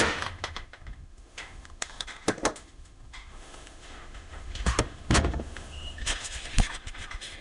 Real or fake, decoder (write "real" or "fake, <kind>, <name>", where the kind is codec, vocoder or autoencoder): fake, autoencoder, DAC-VAE